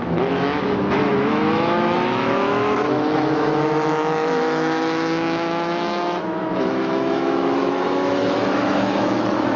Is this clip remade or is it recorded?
remade